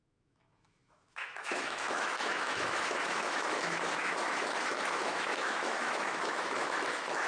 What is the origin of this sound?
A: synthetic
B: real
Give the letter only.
A